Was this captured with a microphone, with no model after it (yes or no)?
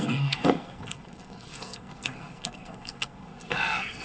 no